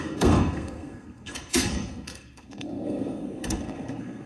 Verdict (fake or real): fake